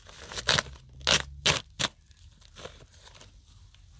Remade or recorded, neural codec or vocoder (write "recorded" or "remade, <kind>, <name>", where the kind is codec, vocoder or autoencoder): recorded